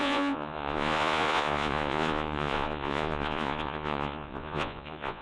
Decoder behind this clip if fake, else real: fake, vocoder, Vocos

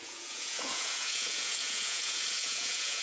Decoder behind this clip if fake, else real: fake, vocoder, Vocos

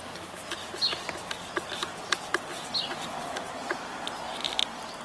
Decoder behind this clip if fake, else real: real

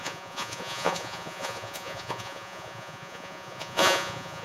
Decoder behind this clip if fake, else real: fake, vocoder, Vocos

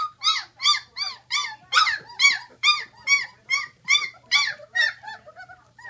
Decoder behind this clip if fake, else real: fake, vocoder, BigVGAN v2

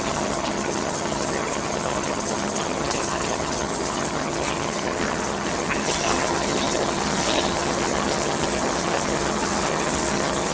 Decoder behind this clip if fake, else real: fake, vocoder, HiFi-GAN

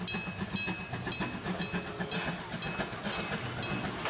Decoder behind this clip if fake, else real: real